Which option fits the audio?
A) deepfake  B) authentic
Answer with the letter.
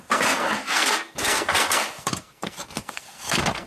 A